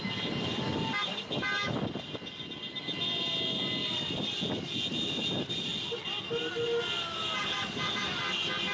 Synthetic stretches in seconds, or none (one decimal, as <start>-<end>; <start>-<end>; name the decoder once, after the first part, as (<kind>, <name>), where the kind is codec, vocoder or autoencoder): none